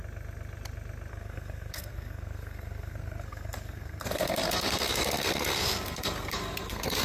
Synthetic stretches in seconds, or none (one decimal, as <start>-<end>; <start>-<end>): 1.1-7.0